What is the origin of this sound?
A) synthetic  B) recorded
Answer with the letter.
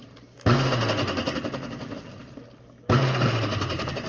B